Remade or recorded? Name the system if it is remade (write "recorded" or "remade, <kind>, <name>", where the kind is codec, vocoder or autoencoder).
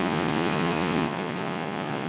remade, vocoder, Vocos